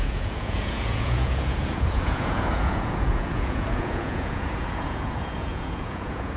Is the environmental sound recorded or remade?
remade